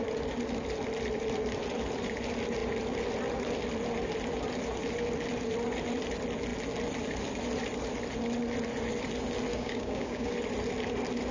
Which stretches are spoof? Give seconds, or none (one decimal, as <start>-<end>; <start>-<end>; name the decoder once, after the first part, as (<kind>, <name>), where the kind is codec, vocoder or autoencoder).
9.5-10.3 (codec, DAC)